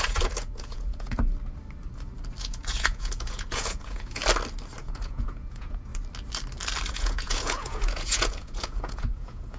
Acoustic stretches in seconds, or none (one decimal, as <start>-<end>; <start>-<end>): 1.3-2.4; 4.2-4.8; 5.9-6.9